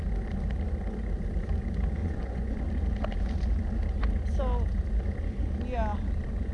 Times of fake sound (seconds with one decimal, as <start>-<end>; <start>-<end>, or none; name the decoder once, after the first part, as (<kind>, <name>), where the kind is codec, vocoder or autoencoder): 2.0-2.6 (vocoder, Vocos)